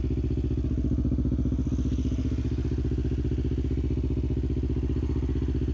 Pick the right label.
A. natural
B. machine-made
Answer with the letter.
A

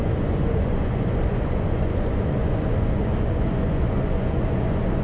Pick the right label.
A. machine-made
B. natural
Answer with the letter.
A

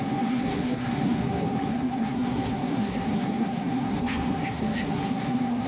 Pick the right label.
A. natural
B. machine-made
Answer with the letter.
B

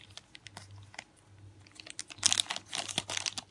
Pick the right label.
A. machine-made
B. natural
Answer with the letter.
B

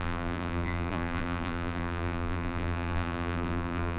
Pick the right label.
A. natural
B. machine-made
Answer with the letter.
B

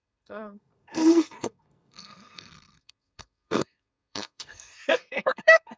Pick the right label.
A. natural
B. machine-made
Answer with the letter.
B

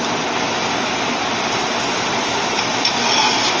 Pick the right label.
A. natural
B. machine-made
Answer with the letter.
B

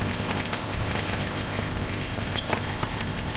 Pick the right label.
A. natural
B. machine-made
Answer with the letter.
B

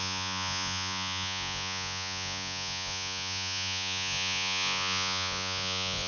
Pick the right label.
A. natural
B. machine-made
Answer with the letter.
B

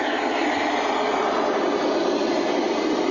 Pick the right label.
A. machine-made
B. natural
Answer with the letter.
B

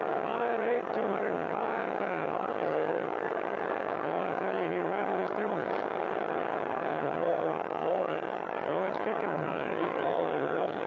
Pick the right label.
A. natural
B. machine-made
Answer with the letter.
B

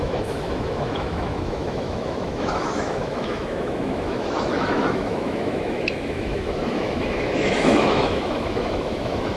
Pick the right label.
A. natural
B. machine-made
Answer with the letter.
B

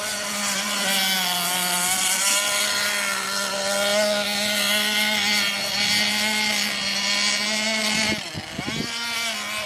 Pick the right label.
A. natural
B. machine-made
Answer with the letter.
A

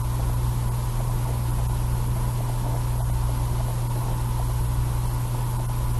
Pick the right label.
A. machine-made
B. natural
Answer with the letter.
B